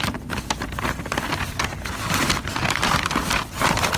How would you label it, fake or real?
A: real